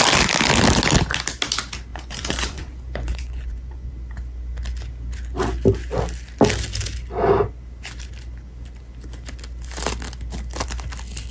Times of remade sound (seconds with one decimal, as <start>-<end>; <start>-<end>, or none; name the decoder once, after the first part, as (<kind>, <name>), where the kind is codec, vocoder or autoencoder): 1.9-3.9 (vocoder, Vocos)